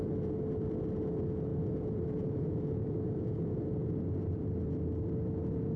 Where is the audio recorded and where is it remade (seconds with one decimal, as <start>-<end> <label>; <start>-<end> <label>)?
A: 0.0-1.5 recorded; 1.5-4.0 remade; 4.0-5.8 recorded